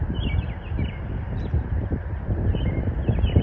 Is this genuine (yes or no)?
no